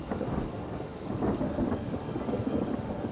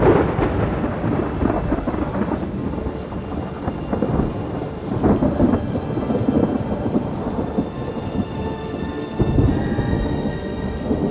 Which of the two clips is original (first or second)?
second